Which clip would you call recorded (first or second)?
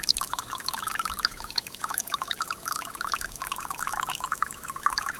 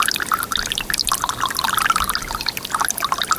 second